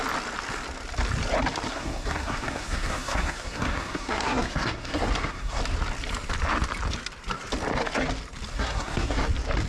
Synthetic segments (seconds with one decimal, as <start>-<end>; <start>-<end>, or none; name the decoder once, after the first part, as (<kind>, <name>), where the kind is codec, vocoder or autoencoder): 1.7-5.6 (codec, SNAC); 8.5-9.2